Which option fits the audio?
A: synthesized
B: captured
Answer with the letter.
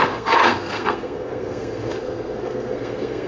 A